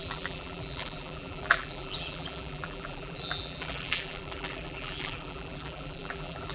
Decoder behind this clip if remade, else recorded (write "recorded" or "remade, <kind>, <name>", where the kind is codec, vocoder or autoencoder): remade, vocoder, BigVGAN v2